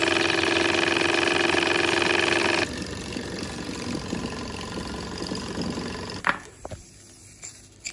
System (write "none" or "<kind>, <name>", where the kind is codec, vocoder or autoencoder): none